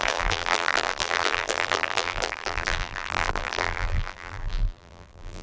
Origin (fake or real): fake